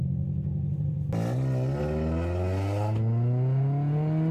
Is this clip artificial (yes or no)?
no